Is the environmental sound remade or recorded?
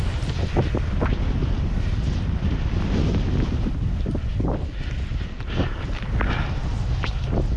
recorded